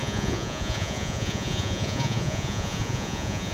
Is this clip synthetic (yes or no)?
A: yes